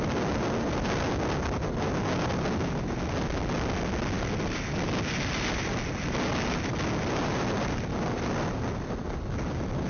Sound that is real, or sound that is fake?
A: real